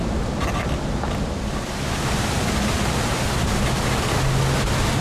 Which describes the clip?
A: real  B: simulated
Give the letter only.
A